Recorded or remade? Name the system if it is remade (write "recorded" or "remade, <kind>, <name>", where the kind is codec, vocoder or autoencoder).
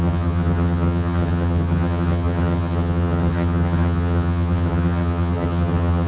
remade, vocoder, HiFi-GAN